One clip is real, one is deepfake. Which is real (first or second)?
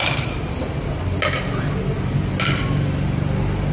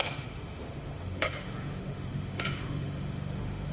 first